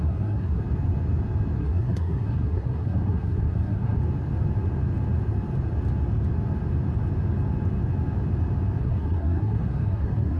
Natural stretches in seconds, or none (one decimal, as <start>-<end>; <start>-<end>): 0.6-1.6; 4.0-8.8